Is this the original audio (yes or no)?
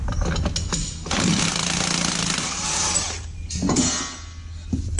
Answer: yes